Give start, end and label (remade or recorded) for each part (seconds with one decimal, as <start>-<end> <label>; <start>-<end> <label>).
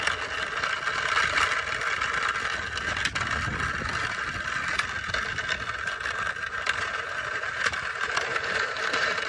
0.0-6.4 recorded; 6.4-9.3 remade